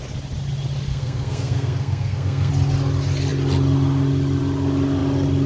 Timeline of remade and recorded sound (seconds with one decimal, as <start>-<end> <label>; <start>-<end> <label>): 0.0-0.9 recorded; 0.9-2.5 remade; 2.5-5.5 recorded